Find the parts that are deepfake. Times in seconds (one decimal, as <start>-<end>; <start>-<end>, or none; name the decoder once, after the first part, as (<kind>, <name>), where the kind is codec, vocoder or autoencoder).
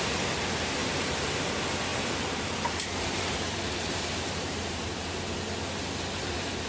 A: 0.8-1.4 (vocoder, BigVGAN v2); 1.9-5.2